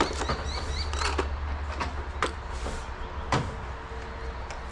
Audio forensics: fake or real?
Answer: real